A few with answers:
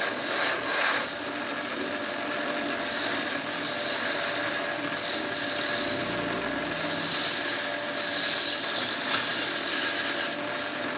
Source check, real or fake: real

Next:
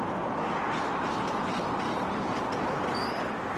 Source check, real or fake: real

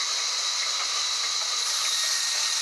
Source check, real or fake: real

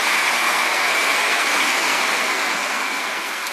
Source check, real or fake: fake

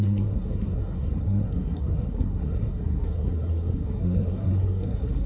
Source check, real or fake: fake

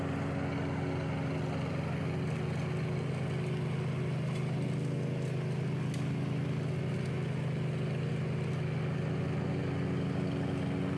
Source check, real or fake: real